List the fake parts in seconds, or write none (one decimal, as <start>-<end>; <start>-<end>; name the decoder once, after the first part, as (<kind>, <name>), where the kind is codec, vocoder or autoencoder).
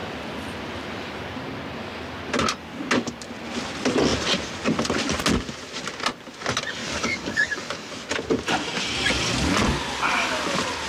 6.8-7.9 (codec, DAC)